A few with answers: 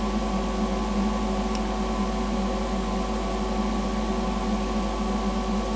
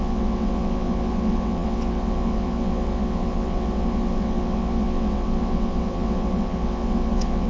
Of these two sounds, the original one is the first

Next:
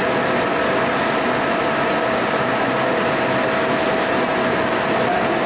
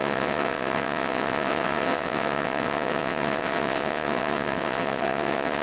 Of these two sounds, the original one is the first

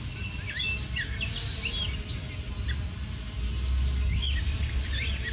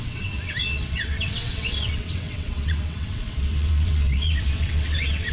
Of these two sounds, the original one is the first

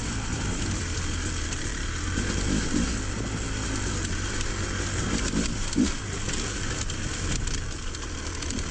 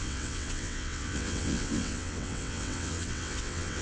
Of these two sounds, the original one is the first